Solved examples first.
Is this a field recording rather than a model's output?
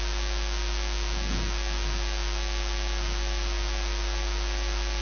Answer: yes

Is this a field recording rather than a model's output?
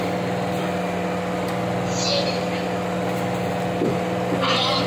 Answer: yes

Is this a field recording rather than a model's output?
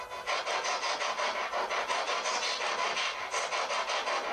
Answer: yes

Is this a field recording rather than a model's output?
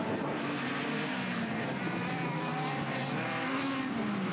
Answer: yes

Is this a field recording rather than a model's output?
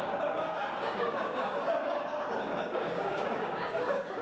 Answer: no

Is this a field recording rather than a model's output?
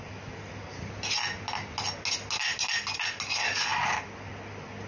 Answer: yes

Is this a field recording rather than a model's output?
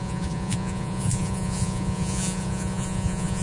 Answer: no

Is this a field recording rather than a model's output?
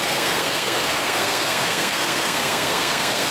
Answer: no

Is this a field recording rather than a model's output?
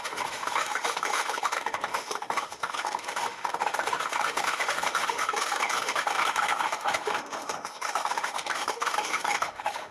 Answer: no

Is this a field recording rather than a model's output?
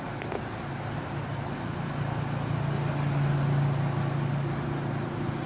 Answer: yes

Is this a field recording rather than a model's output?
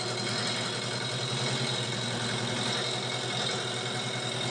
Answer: yes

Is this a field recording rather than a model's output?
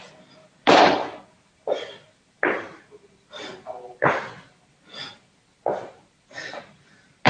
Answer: yes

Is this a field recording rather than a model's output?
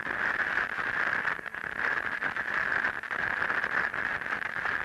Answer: no